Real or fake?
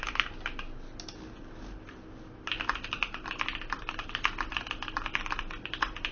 real